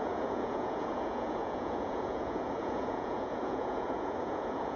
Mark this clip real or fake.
fake